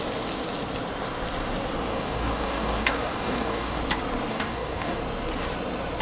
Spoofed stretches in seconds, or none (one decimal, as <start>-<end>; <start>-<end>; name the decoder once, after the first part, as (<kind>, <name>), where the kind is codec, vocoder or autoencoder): 1.9-3.8 (codec, DAC); 4.3-5.0